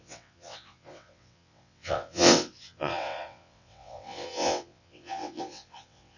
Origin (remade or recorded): remade